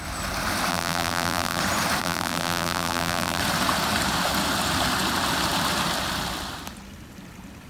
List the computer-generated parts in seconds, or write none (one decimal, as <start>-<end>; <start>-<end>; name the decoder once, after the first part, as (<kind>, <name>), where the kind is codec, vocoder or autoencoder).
0.7-1.6 (vocoder, BigVGAN v2); 2.0-3.4